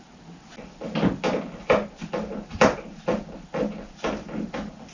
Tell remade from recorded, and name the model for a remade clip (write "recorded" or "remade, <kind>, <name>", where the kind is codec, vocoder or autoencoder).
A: recorded